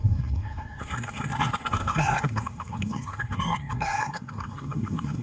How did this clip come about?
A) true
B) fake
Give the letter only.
B